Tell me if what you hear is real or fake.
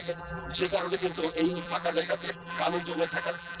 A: fake